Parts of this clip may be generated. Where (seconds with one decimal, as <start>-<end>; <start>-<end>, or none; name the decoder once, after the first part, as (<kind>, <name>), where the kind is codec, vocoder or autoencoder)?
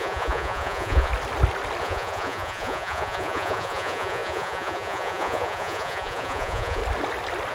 0.0-1.1 (vocoder, Vocos); 1.8-6.8